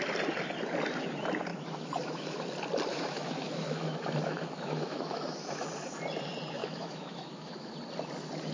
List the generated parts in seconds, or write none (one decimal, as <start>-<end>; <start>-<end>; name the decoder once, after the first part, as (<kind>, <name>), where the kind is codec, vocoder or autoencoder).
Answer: 1.5-2.4 (autoencoder, DAC-VAE); 2.9-6.0; 6.6-7.7